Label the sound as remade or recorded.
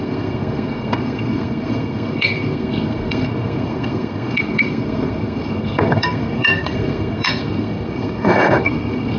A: remade